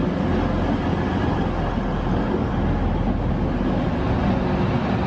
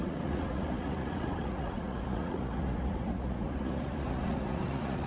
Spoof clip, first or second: second